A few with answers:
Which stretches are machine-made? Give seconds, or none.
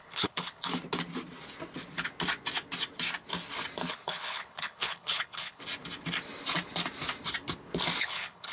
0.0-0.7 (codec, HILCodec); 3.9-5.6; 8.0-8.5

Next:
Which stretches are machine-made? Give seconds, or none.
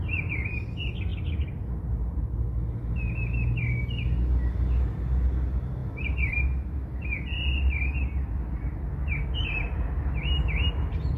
none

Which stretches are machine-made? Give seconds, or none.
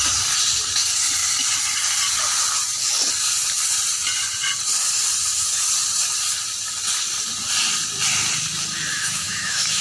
8.9-9.8 (autoencoder, DAC-VAE)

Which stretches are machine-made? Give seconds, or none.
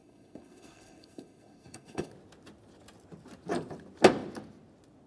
0.0-2.1 (codec, SNAC)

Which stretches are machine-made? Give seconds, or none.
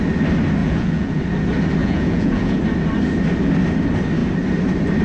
0.6-1.2 (vocoder, Vocos); 1.8-2.6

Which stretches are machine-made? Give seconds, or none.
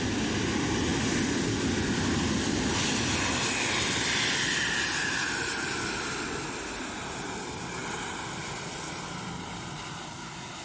none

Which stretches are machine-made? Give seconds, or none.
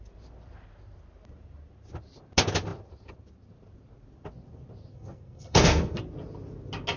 4.9-6.0 (codec, SNAC)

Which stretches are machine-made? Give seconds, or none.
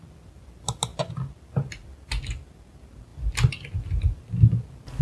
none